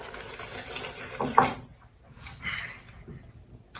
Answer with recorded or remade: recorded